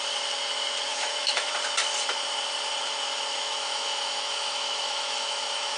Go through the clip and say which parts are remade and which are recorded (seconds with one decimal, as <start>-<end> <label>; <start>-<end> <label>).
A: 0.0-0.9 recorded; 0.9-1.5 remade; 1.5-3.3 recorded; 3.3-5.8 remade